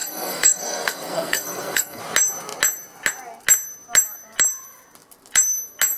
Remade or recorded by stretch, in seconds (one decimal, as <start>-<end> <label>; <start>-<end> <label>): 0.0-2.0 remade; 2.0-6.0 recorded